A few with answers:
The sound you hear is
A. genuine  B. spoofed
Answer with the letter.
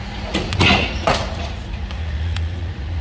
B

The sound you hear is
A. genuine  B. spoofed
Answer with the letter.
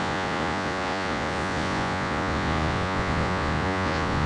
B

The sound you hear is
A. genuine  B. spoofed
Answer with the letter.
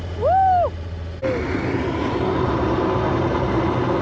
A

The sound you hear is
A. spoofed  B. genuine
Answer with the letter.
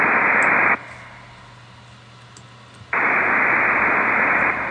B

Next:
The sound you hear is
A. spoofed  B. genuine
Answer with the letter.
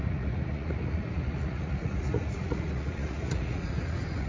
A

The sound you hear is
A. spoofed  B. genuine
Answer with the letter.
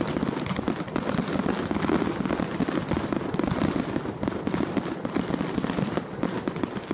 B